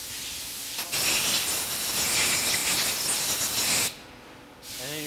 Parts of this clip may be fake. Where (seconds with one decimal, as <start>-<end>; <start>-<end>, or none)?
none